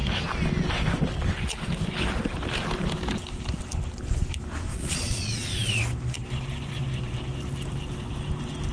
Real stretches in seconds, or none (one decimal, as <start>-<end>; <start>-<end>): 0.0-4.7; 5.8-8.7